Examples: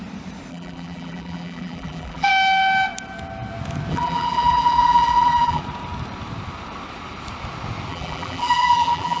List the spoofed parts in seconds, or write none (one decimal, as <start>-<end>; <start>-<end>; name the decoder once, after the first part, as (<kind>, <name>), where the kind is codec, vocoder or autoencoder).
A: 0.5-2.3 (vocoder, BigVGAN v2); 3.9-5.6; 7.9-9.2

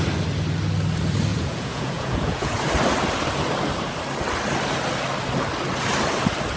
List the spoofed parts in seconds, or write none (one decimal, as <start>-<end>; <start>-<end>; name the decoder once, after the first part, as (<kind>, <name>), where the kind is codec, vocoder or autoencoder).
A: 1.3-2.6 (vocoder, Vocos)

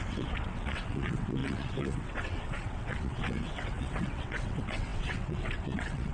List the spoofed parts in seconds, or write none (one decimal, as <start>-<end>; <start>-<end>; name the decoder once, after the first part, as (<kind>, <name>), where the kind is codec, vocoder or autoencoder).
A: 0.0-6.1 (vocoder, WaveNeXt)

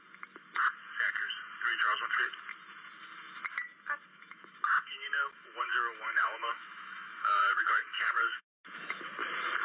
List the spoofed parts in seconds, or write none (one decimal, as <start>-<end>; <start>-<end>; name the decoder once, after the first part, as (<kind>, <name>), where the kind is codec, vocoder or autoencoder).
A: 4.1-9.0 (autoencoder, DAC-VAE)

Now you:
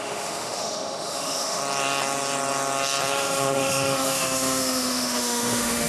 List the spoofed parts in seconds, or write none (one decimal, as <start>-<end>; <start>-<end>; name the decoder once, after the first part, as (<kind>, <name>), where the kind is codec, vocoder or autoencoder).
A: 0.0-1.6 (autoencoder, DAC-VAE); 3.1-5.9